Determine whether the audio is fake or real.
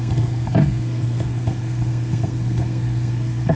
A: fake